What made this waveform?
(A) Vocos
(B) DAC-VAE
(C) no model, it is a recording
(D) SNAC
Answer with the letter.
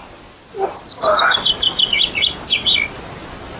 C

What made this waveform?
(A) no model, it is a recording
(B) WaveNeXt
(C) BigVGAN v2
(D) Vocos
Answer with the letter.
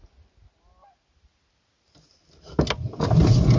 A